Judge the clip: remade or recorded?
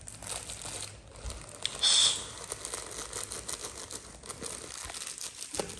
recorded